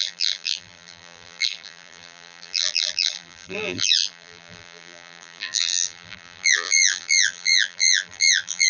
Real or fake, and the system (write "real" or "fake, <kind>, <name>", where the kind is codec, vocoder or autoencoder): fake, vocoder, BigVGAN v2